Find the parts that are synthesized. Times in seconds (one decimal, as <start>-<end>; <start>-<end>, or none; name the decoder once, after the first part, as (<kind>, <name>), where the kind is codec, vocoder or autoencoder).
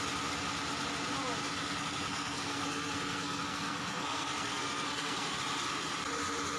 1.4-5.4 (codec, SNAC)